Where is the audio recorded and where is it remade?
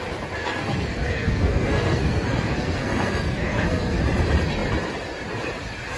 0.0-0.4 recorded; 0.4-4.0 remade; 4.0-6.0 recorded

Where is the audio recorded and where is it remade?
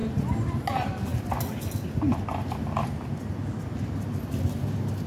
0.0-5.1 recorded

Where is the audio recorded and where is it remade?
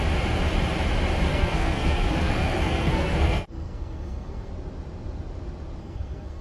0.0-1.3 recorded; 1.3-4.5 remade; 4.5-5.8 recorded; 5.8-6.4 remade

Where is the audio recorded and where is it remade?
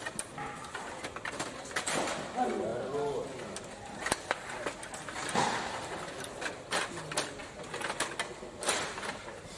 0.0-9.6 recorded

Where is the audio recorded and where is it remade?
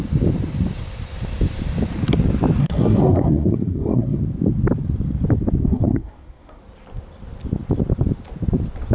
0.0-2.6 recorded; 2.6-4.2 remade; 4.2-5.6 recorded; 5.6-6.6 remade; 6.6-8.9 recorded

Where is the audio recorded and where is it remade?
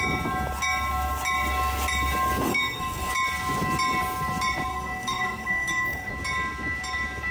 0.0-2.5 recorded; 2.5-3.1 remade; 3.1-4.7 recorded; 4.7-6.1 remade; 6.1-7.3 recorded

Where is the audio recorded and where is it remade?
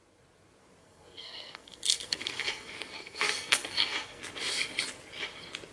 0.0-0.8 recorded; 0.8-4.2 remade; 4.2-5.7 recorded